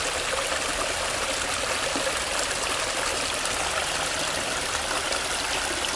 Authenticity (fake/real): real